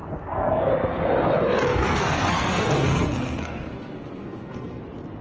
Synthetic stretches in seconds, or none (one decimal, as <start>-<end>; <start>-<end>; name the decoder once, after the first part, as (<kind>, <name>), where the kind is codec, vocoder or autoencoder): 0.0-0.7 (codec, SNAC); 1.7-4.8